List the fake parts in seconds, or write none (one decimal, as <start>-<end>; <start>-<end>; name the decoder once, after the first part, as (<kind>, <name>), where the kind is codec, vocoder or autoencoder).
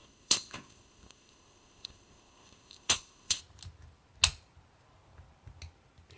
0.0-3.4 (codec, ZipCodec)